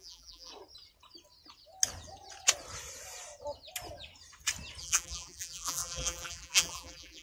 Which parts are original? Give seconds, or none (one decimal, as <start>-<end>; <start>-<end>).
0.5-4.8